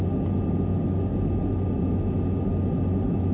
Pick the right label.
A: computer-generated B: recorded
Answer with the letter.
B